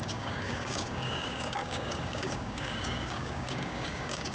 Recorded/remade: remade